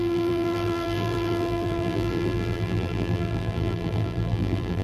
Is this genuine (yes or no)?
no